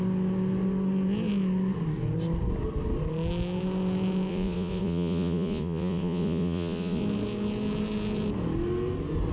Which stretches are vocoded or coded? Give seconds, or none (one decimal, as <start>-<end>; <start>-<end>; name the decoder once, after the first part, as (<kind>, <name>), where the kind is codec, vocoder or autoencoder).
4.3-7.0 (vocoder, Vocos)